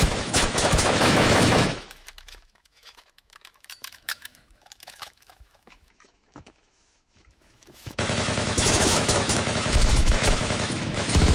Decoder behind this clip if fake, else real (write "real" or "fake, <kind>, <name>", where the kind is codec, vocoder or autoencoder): fake, autoencoder, DAC-VAE